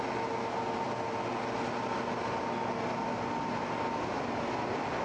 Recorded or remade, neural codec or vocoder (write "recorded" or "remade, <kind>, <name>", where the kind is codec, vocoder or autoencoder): recorded